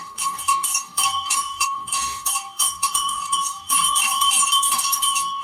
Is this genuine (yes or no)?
no